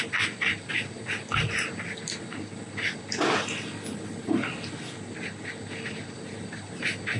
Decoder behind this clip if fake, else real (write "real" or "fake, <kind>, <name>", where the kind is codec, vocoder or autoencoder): real